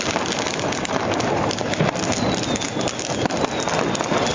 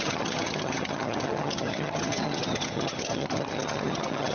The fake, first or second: second